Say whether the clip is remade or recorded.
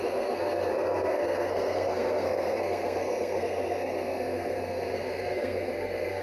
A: remade